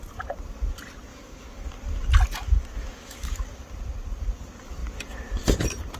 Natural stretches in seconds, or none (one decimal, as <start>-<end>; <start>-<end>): 0.0-1.1; 1.7-2.8; 3.4-6.0